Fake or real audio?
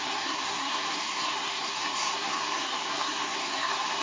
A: fake